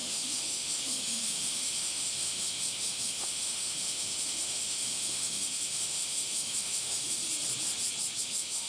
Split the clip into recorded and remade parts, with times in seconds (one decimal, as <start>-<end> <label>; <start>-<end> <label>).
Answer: 0.0-7.2 remade; 7.2-8.2 recorded; 8.2-8.7 remade